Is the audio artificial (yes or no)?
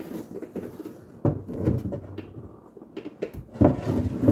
no